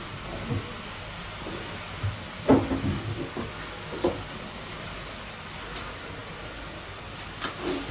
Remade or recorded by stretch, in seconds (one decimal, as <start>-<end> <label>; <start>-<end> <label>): 0.0-7.9 recorded